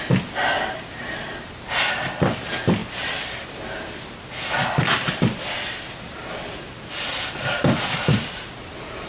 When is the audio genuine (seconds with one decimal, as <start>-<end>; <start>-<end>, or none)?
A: 0.0-9.1